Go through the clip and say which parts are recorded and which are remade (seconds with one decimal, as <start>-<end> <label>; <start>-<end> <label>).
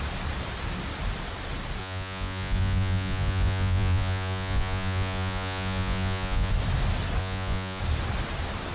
0.0-1.8 recorded; 1.8-6.5 remade; 6.5-7.2 recorded; 7.2-7.8 remade; 7.8-8.7 recorded